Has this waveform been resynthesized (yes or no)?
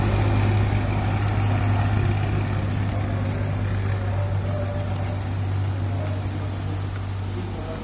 no